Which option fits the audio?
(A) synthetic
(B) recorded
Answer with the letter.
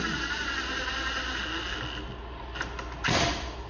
B